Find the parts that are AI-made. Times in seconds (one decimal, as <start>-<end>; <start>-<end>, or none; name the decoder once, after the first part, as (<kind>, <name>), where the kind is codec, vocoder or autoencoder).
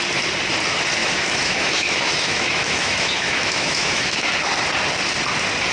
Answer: 1.0-4.3 (autoencoder, DAC-VAE)